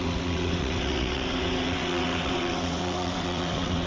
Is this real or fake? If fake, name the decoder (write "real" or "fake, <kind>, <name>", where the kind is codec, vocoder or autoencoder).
fake, vocoder, WaveNeXt